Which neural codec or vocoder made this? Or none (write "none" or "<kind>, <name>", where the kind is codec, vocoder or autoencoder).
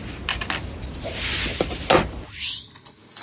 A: none